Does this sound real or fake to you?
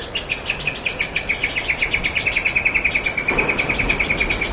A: real